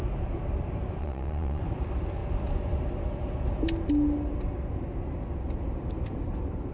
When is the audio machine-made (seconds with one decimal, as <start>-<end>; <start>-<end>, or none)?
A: 1.0-1.6